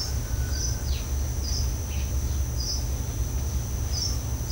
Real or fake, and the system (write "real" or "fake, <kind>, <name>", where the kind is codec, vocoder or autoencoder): real